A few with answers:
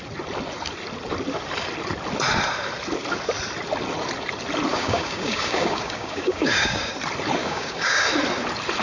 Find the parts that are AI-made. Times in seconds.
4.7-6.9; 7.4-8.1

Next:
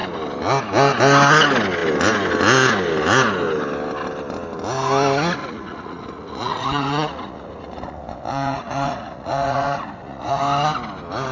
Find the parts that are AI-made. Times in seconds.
5.4-10.4

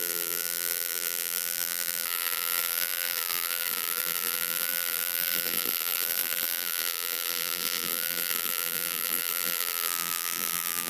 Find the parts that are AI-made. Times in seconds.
0.0-10.9